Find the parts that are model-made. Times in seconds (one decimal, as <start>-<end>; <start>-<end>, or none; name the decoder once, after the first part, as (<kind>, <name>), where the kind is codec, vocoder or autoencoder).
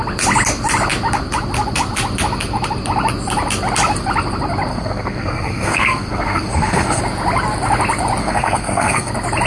4.7-7.0 (codec, SNAC); 8.2-9.1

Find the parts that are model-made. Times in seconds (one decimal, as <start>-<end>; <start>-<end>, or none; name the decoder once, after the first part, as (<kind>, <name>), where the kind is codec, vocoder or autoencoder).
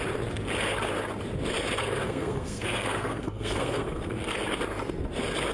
1.8-4.4 (codec, SNAC)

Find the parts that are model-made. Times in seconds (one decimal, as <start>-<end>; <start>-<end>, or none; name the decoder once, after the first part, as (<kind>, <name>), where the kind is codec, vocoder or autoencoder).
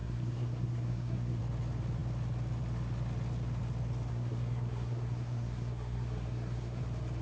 0.0-1.4 (codec, SNAC); 4.1-6.8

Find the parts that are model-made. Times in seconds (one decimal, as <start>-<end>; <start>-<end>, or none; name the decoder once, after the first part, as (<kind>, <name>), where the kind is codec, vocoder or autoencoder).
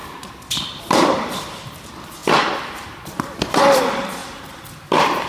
0.0-5.3 (vocoder, BigVGAN v2)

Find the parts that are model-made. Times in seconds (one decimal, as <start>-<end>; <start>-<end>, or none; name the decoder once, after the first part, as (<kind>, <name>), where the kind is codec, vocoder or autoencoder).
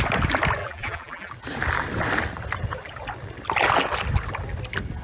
0.6-1.3 (vocoder, BigVGAN v2)